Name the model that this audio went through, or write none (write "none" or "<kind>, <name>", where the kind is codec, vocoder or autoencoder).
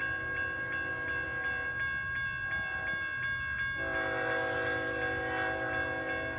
none